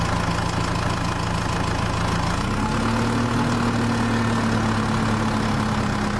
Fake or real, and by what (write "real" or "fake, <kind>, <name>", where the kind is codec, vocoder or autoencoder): real